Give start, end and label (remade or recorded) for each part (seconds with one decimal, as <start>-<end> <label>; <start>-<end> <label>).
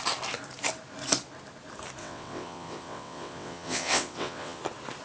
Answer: 0.0-2.0 recorded; 2.0-4.6 remade; 4.6-5.0 recorded